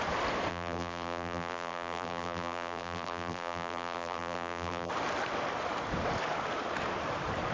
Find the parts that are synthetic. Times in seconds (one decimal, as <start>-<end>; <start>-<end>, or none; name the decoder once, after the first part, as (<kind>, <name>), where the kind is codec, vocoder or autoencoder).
0.5-4.9 (vocoder, BigVGAN v2)